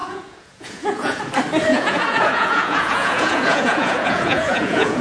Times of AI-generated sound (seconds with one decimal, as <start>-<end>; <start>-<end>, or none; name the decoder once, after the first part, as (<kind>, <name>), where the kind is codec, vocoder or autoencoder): 0.0-1.2 (vocoder, Vocos); 1.7-5.0